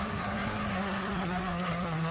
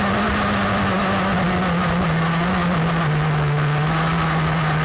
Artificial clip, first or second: first